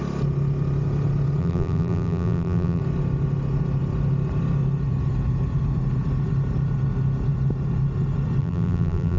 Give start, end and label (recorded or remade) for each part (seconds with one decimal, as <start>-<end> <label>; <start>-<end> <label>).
0.0-1.4 recorded; 1.4-2.8 remade; 2.8-8.4 recorded; 8.4-9.2 remade